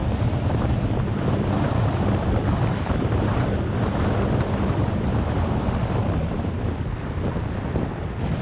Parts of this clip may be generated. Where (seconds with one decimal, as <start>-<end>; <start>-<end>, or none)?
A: 0.8-3.3; 4.9-6.2; 8.0-8.4

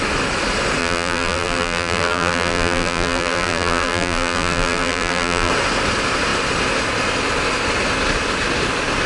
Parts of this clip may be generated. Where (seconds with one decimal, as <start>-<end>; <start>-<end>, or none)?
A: 0.8-5.5

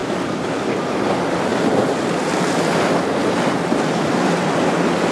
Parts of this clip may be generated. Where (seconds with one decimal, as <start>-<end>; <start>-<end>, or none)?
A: 0.0-0.5; 1.5-4.6